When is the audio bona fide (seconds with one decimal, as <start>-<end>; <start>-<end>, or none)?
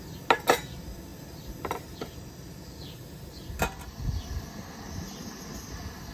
0.0-6.1